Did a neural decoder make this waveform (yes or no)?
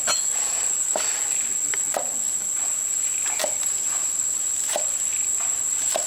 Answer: no